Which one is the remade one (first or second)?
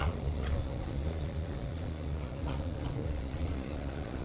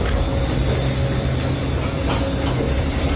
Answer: first